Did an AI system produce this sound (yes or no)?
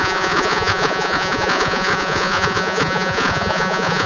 yes